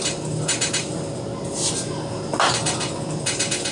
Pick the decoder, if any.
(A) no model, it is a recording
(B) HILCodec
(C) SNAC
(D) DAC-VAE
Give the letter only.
A